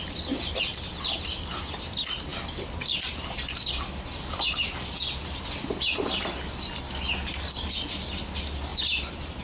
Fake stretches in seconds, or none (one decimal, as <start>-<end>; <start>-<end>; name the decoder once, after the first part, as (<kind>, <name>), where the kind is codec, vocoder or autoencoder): none